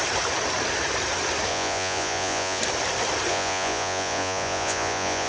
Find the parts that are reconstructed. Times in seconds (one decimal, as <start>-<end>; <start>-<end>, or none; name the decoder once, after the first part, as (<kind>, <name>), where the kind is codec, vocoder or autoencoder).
1.5-2.6 (vocoder, Vocos); 3.3-5.3